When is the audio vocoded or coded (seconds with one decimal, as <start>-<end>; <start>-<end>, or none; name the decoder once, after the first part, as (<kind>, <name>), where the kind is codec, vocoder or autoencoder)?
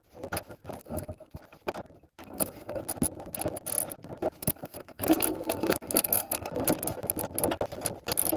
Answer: 0.8-1.4 (codec, SNAC); 2.2-2.8; 4.4-6.5